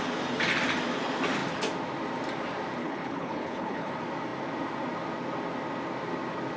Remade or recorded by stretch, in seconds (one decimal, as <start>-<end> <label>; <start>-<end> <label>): 0.0-2.8 recorded; 2.8-3.9 remade; 3.9-6.6 recorded